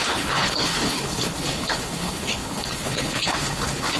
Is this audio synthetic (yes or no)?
yes